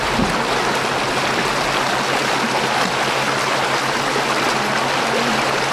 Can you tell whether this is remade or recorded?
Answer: recorded